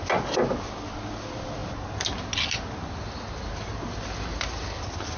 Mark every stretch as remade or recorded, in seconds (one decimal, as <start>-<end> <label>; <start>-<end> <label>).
0.0-5.2 recorded